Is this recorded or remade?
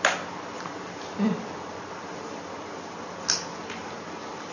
recorded